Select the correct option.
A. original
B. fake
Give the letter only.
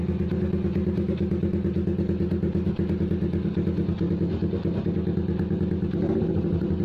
A